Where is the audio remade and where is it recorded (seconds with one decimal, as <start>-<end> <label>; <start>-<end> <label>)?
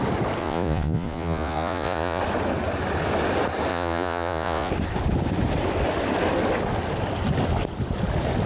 0.0-0.4 recorded; 0.4-2.2 remade; 2.2-3.7 recorded; 3.7-4.7 remade; 4.7-8.5 recorded